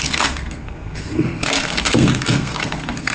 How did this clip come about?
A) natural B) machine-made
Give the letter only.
B